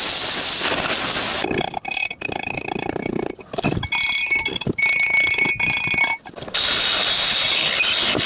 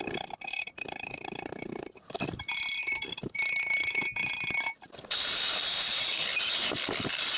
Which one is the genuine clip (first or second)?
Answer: first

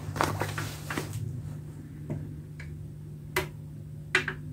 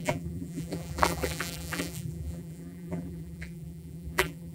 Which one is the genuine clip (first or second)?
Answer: first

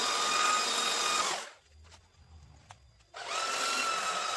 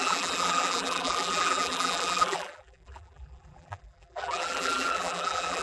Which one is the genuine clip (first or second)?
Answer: first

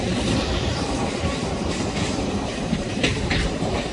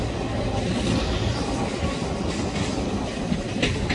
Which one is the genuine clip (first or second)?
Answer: second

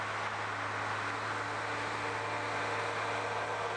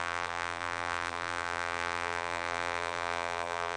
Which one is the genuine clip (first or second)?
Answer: first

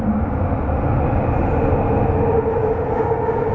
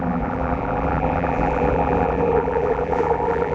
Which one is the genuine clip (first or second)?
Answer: first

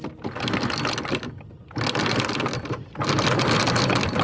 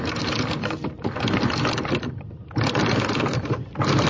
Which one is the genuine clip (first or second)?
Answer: first